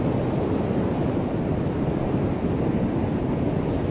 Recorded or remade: recorded